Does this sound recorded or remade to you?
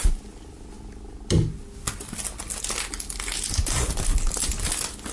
recorded